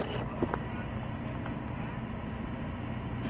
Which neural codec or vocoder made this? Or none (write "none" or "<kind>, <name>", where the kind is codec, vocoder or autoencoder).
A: none